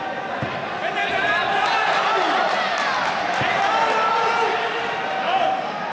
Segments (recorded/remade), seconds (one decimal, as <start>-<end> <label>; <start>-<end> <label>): 0.0-5.9 recorded